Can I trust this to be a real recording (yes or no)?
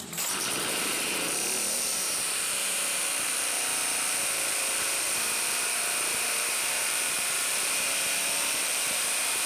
no